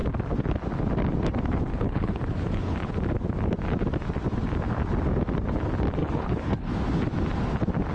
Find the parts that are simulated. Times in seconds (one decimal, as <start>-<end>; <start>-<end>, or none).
1.7-2.9; 6.0-6.7